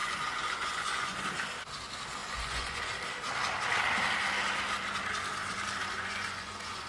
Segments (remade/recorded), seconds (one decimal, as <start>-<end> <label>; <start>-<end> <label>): 0.0-1.2 remade; 1.2-2.2 recorded; 2.2-2.9 remade; 2.9-5.8 recorded; 5.8-6.9 remade